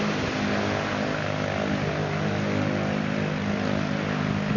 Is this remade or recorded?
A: recorded